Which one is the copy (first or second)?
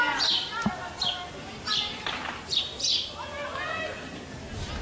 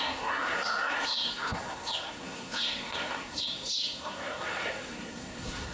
second